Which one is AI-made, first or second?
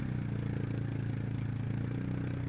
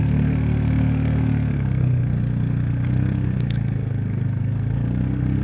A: second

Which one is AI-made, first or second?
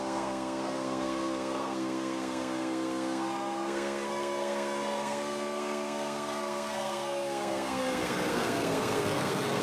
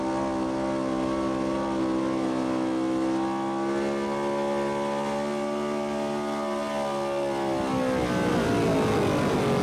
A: first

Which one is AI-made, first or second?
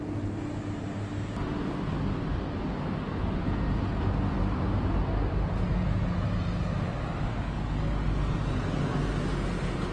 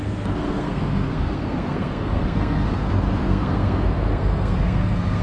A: second